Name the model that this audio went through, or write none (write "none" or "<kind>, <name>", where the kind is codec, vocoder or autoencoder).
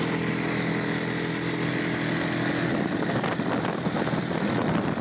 none